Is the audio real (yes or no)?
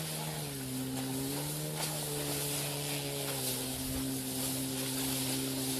yes